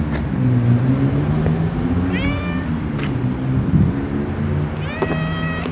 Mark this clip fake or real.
real